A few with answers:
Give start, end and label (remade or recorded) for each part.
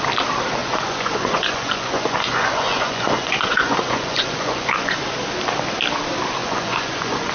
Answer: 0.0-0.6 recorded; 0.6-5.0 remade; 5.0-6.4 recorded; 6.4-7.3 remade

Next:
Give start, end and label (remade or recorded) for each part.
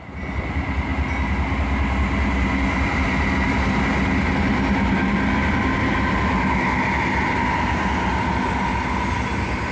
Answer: 0.0-9.7 recorded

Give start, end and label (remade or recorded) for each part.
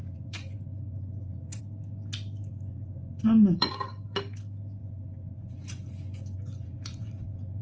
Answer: 0.0-1.6 remade; 1.6-2.5 recorded; 2.5-3.7 remade; 3.7-4.8 recorded; 4.8-7.6 remade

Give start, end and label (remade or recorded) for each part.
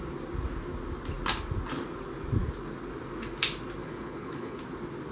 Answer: 0.0-3.8 recorded; 3.8-4.6 remade; 4.6-5.1 recorded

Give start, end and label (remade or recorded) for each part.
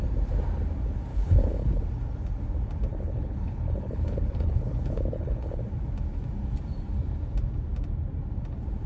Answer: 0.0-1.1 recorded; 1.1-1.8 remade; 1.8-2.9 recorded; 2.9-5.6 remade; 5.6-8.9 recorded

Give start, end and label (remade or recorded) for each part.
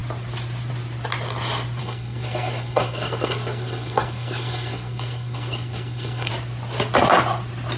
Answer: 0.0-1.8 recorded; 1.8-6.3 remade; 6.3-7.8 recorded